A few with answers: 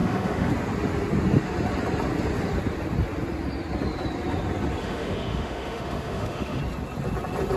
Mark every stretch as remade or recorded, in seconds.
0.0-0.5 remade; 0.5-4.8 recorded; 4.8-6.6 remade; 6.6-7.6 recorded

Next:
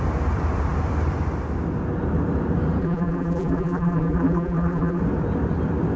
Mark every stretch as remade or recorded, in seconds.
0.0-2.8 recorded; 2.8-5.0 remade; 5.0-6.0 recorded

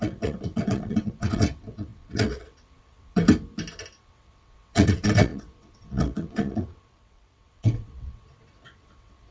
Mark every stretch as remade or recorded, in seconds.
0.0-3.2 remade; 3.2-4.0 recorded; 4.0-9.3 remade